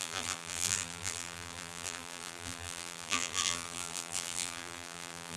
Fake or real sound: fake